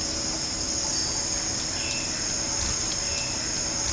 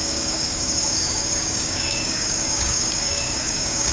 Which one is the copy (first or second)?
second